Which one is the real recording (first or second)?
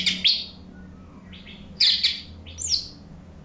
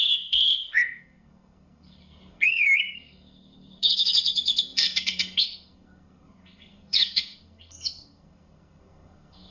first